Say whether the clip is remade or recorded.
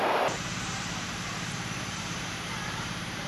remade